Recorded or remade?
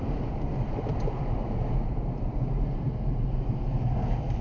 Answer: remade